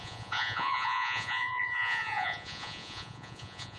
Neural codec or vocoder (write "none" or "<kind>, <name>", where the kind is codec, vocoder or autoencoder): vocoder, Vocos